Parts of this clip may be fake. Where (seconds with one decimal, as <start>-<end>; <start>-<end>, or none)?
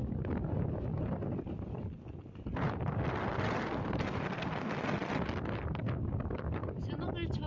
none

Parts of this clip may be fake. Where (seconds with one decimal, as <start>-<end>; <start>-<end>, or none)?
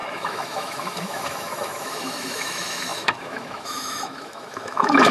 0.0-5.1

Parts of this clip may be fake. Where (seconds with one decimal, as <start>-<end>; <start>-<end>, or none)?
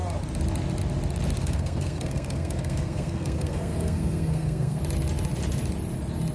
1.4-4.8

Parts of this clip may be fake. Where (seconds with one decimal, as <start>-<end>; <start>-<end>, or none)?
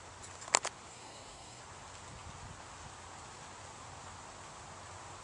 0.9-1.6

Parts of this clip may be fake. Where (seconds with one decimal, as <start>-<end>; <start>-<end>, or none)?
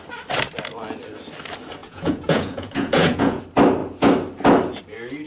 1.8-3.4